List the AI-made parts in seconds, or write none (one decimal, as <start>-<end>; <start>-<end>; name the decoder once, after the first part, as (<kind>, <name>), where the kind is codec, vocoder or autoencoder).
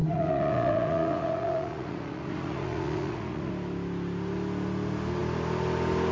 0.0-3.5 (vocoder, Vocos)